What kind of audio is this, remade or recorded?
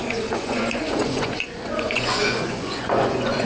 remade